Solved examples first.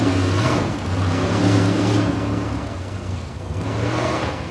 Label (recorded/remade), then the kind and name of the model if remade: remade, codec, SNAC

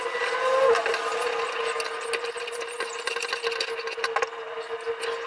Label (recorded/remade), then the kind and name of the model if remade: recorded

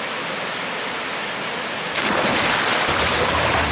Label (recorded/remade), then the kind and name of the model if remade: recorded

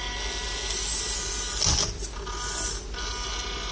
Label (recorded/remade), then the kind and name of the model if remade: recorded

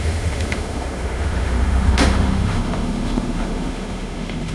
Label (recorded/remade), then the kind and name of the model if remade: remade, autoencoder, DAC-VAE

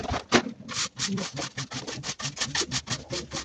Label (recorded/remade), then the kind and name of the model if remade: remade, vocoder, BigVGAN v2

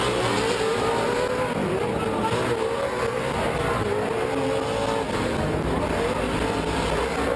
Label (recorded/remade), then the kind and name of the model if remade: recorded